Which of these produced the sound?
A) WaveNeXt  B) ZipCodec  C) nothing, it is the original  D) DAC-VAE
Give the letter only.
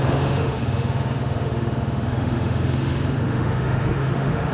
D